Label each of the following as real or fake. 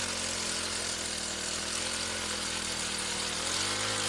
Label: real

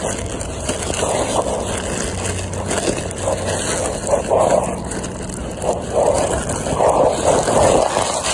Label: real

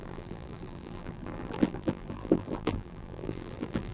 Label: fake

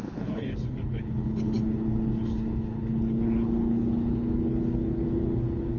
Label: fake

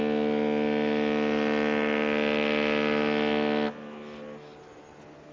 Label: real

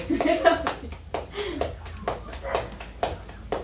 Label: real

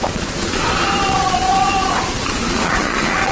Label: fake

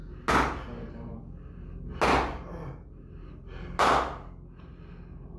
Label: real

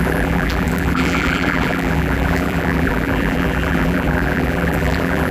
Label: fake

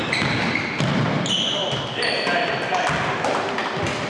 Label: real